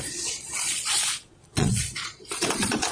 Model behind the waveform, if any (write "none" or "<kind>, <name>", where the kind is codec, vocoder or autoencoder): vocoder, Vocos